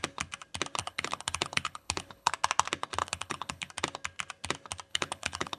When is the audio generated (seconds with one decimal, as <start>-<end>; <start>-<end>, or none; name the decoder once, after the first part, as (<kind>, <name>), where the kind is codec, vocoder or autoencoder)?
0.8-2.3 (codec, HILCodec); 3.0-3.7; 4.9-5.6